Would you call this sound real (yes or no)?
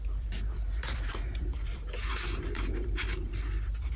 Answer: no